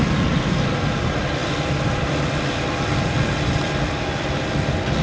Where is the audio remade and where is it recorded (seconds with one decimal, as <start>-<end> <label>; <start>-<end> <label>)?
0.0-1.4 recorded; 1.4-4.4 remade; 4.4-5.0 recorded